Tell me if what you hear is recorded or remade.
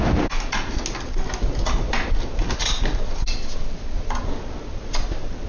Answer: recorded